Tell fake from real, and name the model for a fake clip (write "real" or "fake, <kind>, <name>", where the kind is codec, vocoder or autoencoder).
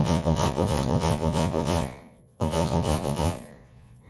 fake, vocoder, Vocos